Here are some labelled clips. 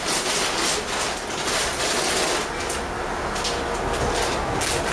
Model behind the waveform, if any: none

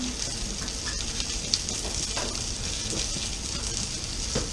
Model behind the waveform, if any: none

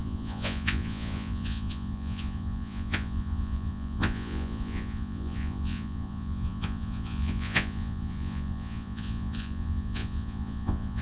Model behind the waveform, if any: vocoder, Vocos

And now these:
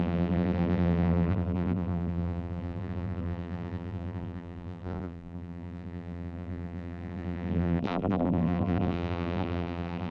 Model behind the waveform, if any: vocoder, BigVGAN v2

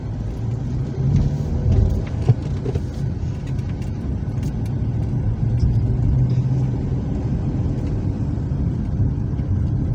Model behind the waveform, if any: none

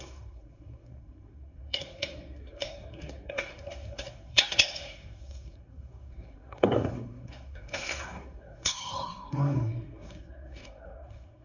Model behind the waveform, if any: codec, SNAC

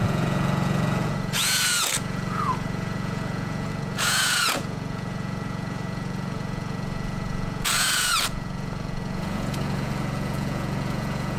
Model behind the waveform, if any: vocoder, Vocos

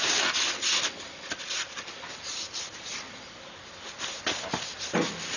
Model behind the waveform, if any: none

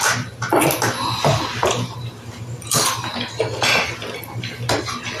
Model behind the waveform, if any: none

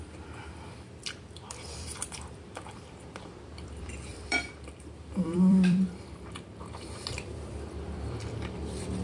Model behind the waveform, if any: vocoder, BigVGAN v2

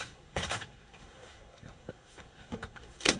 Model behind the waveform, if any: codec, SNAC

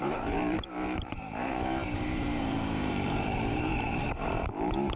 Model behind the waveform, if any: vocoder, BigVGAN v2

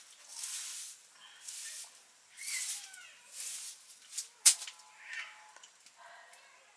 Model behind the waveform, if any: none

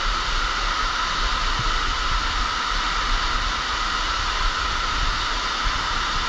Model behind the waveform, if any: none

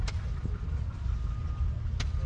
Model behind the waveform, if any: none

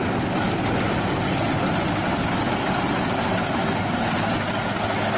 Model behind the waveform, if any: none